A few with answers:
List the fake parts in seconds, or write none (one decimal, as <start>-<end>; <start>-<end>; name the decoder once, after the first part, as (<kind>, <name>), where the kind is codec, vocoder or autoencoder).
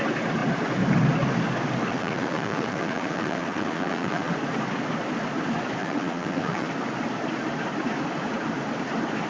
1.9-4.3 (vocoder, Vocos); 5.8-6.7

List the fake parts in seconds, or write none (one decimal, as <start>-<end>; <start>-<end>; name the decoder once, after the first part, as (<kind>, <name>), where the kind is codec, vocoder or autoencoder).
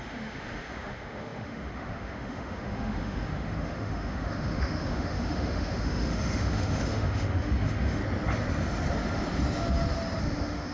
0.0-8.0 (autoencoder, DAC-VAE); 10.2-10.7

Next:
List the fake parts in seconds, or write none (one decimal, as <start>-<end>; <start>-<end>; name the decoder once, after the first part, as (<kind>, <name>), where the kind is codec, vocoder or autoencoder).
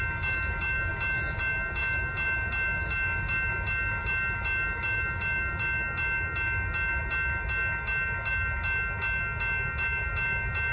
none